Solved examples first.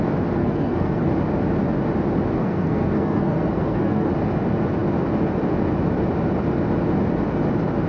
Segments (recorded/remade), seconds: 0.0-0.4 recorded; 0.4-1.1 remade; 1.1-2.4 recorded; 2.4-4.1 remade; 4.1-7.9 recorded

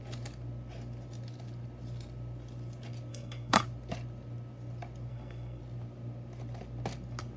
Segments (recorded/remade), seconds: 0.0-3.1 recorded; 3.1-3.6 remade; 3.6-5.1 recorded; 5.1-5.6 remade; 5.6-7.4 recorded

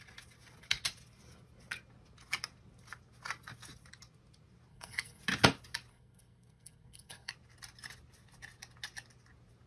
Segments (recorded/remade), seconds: 0.0-4.7 recorded; 4.7-5.2 remade; 5.2-5.9 recorded; 5.9-7.3 remade; 7.3-9.7 recorded

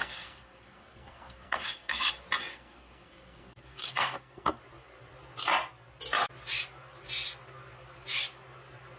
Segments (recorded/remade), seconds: 0.0-2.1 remade; 2.1-2.5 recorded; 2.5-4.6 remade; 4.6-9.0 recorded